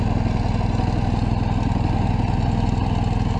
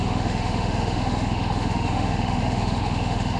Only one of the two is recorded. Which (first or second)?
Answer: first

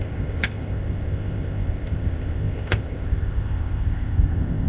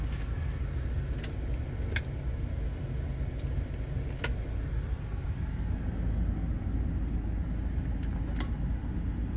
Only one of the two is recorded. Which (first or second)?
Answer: second